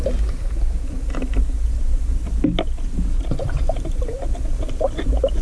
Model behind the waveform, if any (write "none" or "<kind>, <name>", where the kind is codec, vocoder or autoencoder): none